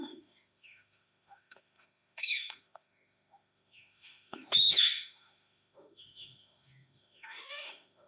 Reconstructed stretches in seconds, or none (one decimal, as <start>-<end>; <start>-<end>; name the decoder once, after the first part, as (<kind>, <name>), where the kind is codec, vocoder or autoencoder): 0.0-8.1 (autoencoder, DAC-VAE)